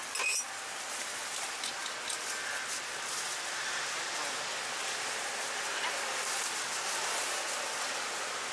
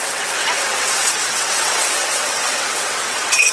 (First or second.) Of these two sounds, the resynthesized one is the second